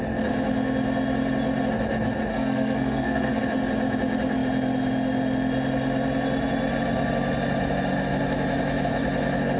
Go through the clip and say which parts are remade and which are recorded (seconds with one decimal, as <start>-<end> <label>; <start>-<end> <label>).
0.0-2.3 recorded; 2.3-3.4 remade; 3.4-9.6 recorded